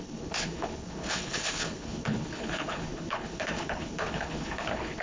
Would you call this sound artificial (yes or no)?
yes